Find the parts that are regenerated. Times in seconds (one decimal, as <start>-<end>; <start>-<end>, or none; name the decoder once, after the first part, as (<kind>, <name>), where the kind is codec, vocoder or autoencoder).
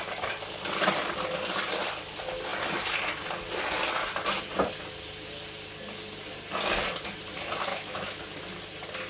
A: 7.7-8.2 (autoencoder, DAC-VAE)